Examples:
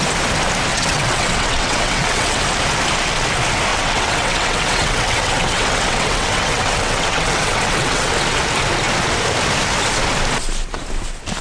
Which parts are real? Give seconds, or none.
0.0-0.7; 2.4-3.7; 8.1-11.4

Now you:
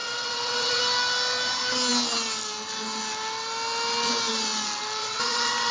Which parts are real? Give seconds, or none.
0.8-5.0

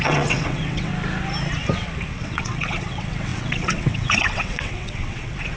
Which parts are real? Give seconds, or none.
0.9-2.1

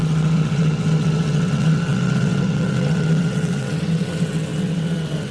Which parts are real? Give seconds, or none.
none

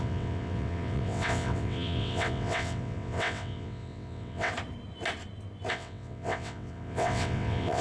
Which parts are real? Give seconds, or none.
4.5-5.7